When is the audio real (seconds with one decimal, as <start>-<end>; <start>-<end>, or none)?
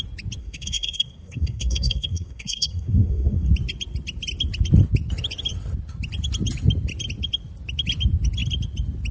0.0-0.4; 3.5-9.1